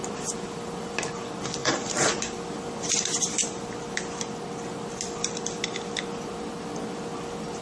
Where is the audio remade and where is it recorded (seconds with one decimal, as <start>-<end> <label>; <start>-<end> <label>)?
0.0-1.6 recorded; 1.6-2.1 remade; 2.1-7.6 recorded